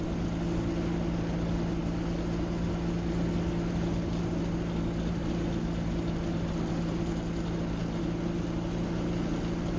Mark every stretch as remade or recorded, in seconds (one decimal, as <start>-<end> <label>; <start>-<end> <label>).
0.0-9.8 recorded